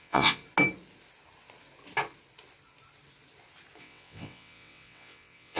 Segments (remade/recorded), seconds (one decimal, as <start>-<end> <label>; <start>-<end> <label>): 0.0-0.4 remade; 0.4-3.8 recorded; 3.8-5.6 remade